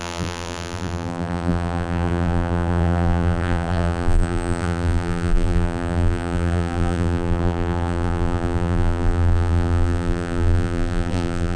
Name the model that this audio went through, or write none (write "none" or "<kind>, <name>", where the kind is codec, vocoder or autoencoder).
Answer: vocoder, BigVGAN v2